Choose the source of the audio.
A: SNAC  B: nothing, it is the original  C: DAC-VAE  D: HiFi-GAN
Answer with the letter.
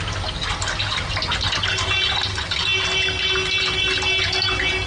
B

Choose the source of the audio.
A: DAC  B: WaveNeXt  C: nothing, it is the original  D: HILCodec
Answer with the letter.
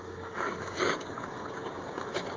A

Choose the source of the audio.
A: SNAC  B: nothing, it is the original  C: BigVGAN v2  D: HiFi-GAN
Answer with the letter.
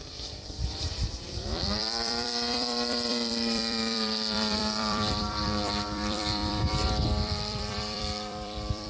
C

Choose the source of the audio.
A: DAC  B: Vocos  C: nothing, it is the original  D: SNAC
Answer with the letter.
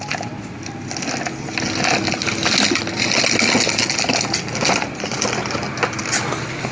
C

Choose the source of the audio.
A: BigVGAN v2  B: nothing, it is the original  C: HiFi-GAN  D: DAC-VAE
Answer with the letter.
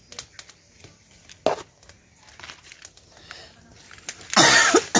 B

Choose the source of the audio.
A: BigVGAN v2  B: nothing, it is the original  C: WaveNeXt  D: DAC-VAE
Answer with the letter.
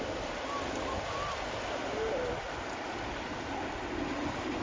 B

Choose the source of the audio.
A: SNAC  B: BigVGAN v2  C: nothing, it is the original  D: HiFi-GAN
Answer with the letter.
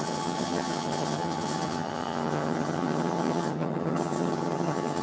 D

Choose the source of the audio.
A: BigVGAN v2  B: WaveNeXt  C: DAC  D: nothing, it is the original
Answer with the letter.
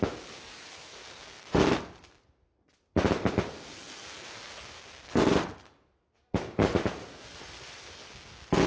D